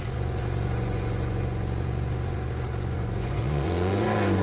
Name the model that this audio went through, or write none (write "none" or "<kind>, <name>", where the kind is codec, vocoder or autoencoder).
vocoder, Vocos